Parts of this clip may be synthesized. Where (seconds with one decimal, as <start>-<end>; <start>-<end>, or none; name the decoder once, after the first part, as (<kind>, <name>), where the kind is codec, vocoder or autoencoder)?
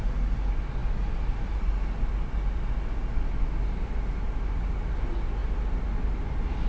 none